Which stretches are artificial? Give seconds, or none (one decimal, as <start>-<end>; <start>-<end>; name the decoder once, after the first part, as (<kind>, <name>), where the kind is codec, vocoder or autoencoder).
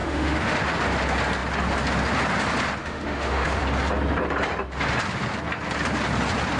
0.0-0.6 (autoencoder, DAC-VAE); 2.8-3.6